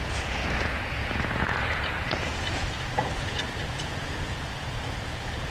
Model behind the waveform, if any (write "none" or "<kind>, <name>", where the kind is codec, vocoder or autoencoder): vocoder, Vocos